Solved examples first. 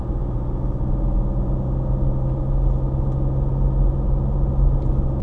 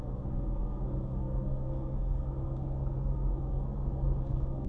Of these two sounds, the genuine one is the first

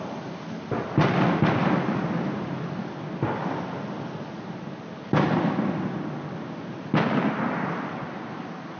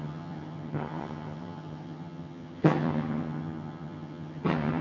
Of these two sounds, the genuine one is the first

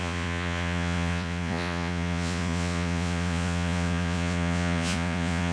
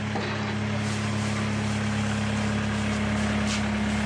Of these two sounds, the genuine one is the second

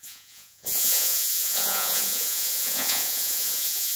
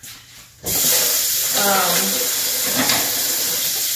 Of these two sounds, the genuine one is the second